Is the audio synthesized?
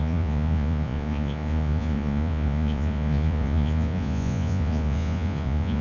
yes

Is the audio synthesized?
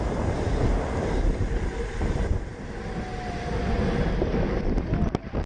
no